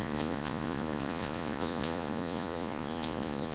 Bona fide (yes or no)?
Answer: no